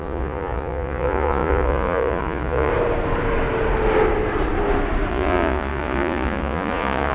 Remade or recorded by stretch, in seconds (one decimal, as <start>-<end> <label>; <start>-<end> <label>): 0.0-2.7 remade; 2.7-5.1 recorded; 5.1-7.1 remade